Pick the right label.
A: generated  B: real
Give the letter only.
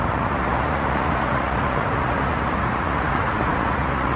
A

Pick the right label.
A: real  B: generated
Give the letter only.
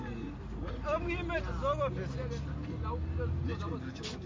A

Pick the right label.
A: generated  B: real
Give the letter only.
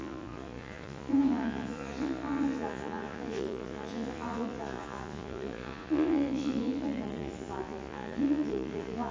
A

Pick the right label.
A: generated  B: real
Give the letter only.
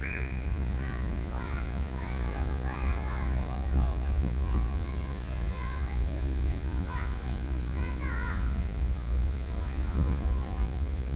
A